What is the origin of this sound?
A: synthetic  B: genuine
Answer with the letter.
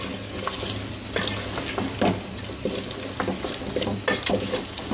B